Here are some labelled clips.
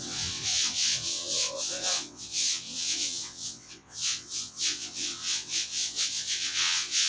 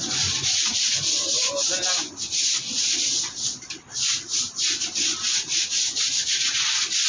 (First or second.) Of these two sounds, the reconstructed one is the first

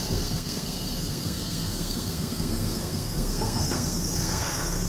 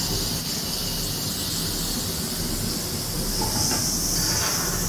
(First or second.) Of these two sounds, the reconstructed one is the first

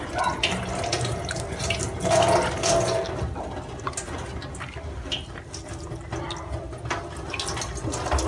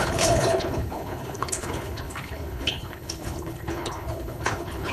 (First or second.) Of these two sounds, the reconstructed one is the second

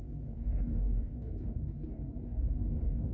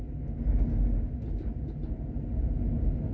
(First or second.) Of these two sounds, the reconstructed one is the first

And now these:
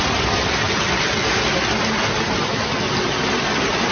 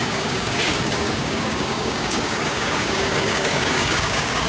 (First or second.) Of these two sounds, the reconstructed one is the second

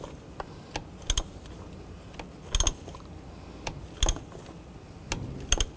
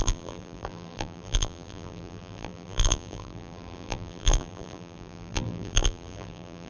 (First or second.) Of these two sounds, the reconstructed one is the second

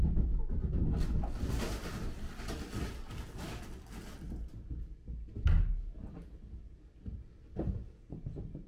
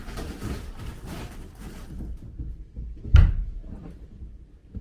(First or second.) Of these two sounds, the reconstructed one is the second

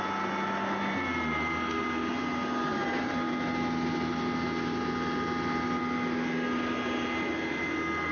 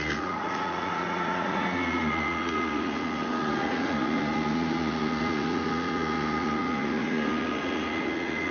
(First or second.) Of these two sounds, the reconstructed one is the second